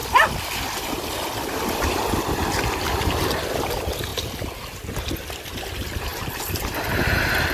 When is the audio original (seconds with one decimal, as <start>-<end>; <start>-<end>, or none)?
0.0-7.5